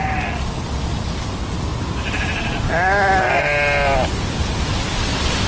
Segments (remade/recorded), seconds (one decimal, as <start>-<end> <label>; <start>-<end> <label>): 0.0-5.5 recorded